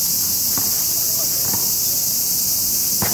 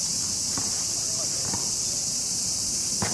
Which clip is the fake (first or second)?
second